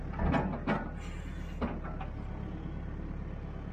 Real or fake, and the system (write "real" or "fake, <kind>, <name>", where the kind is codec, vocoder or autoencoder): real